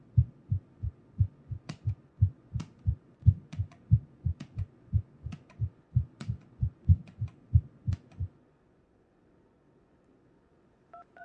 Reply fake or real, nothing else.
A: fake